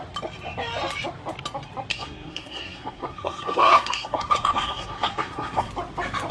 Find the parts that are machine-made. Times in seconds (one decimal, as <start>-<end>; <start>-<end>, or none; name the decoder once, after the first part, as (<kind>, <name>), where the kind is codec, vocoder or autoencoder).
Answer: 1.9-5.7 (codec, SNAC)